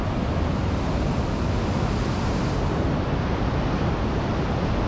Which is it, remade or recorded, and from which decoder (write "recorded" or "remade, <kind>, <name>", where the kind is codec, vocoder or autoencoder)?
recorded